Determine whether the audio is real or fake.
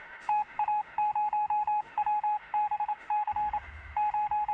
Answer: fake